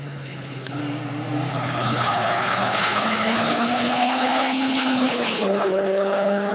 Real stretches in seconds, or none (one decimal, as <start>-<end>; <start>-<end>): 0.8-1.5